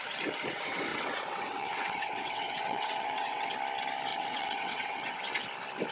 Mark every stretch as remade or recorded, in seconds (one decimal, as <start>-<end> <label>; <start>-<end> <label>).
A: 0.0-0.9 recorded; 0.9-3.5 remade; 3.5-4.1 recorded; 4.1-5.2 remade; 5.2-5.9 recorded